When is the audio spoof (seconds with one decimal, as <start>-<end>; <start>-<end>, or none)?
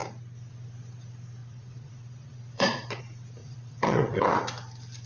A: 1.4-3.0; 3.4-4.4